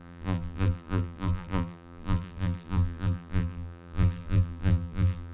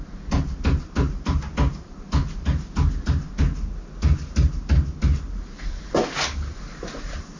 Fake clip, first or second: first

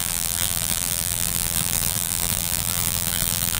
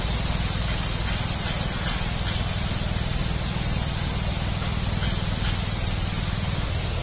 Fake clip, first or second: first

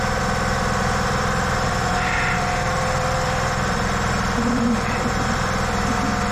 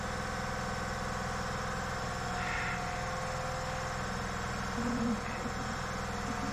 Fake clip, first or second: first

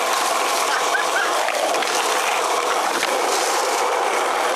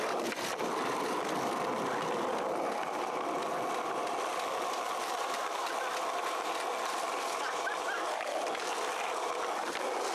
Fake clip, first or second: first